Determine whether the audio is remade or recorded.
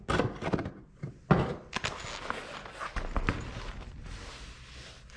recorded